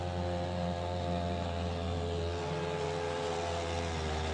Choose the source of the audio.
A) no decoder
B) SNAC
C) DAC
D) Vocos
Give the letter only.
A